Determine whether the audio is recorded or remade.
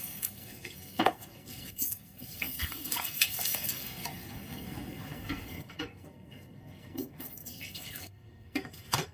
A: remade